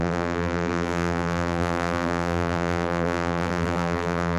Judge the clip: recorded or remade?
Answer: remade